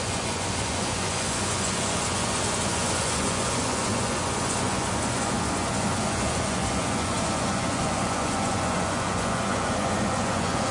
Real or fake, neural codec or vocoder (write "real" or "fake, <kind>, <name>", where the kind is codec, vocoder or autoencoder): fake, vocoder, Vocos